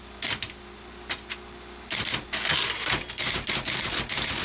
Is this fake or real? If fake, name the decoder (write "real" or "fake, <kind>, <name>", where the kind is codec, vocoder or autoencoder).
real